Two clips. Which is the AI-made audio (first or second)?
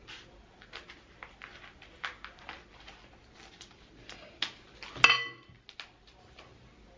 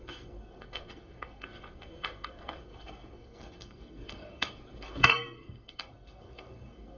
second